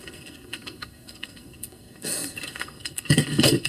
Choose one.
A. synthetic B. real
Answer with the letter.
A